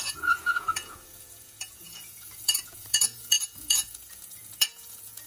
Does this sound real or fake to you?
fake